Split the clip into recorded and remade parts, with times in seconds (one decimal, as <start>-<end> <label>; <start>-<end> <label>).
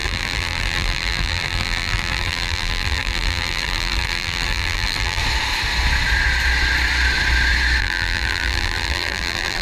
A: 0.0-5.2 remade; 5.2-7.8 recorded; 7.8-9.6 remade